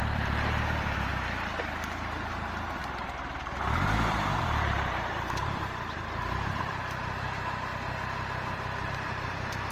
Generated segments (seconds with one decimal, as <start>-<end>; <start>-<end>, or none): 0.0-1.1; 1.6-7.7; 8.9-9.7